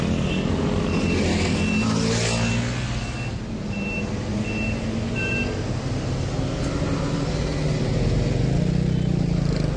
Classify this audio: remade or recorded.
recorded